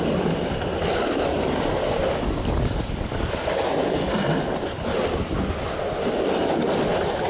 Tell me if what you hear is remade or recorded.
recorded